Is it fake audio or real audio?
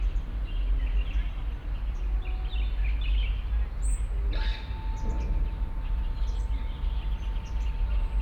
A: real